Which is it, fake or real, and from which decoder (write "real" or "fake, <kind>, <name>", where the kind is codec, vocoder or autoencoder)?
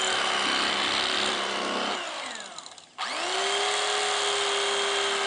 real